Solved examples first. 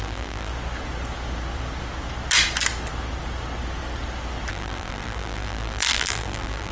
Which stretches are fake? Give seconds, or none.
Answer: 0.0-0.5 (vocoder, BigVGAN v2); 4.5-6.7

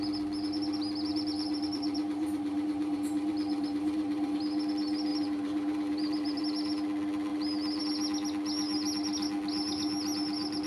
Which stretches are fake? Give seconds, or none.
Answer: 1.1-4.4 (vocoder, BigVGAN v2); 5.1-6.4

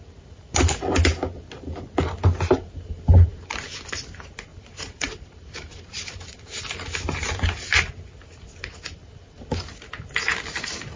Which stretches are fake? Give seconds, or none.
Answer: 3.3-4.0 (vocoder, BigVGAN v2); 4.5-7.8

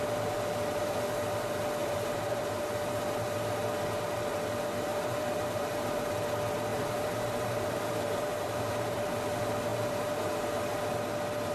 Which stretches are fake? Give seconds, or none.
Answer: 1.8-2.6 (vocoder, BigVGAN v2); 4.9-5.7; 6.7-9.2; 9.7-10.3

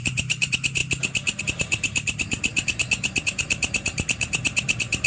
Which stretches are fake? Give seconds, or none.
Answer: 0.0-0.8 (vocoder, BigVGAN v2); 1.4-5.1